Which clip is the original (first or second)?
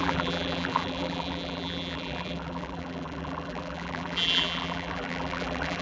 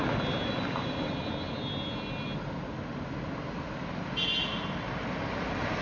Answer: second